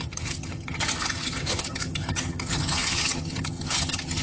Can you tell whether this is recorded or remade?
remade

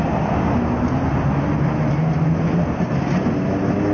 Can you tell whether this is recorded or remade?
recorded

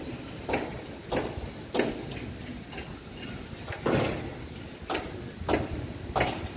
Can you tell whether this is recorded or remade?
recorded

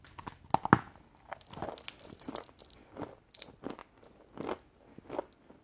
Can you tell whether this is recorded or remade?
recorded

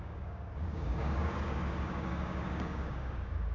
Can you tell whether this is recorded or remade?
remade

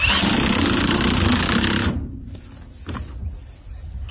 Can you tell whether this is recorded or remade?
recorded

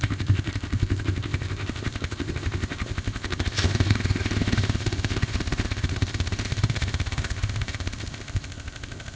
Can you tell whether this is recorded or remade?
remade